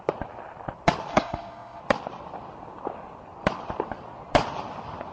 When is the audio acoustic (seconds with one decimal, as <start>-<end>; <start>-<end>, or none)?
0.0-1.1; 1.8-5.1